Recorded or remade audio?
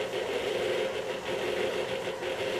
recorded